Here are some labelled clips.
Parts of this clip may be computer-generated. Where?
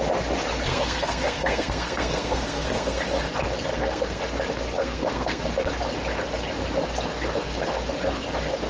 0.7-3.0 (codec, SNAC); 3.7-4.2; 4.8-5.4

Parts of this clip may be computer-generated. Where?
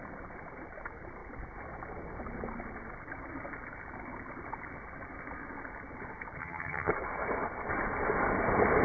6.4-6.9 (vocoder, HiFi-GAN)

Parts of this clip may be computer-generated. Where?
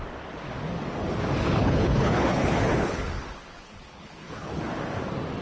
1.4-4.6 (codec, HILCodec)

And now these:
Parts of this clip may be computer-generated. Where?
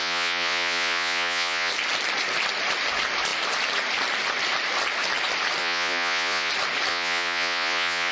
0.0-1.7 (vocoder, Vocos); 5.6-6.5; 6.9-8.1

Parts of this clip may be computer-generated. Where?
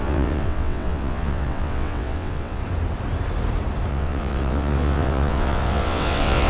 0.0-2.6 (vocoder, WaveNeXt); 3.9-6.5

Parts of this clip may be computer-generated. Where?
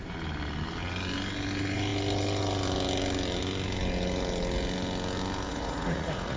5.5-6.4 (vocoder, Vocos)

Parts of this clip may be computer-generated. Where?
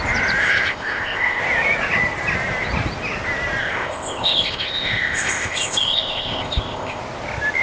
0.4-1.4 (codec, ZipCodec); 3.6-7.0